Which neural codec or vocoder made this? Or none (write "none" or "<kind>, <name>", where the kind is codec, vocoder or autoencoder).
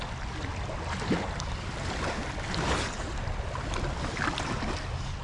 none